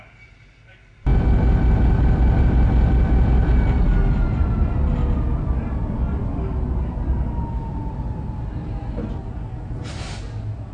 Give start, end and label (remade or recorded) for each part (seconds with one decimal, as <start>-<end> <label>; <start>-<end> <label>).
0.0-10.7 recorded